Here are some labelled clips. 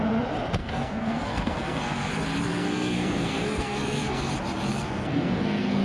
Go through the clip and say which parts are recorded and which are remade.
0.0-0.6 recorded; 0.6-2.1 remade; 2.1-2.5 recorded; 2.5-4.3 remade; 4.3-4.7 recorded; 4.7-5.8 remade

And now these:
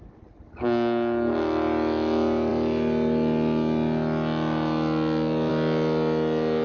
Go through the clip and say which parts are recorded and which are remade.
0.0-6.6 recorded